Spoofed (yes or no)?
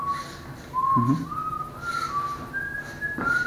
no